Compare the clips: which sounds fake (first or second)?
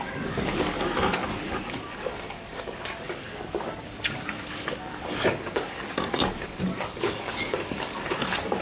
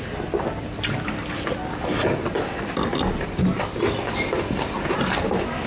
first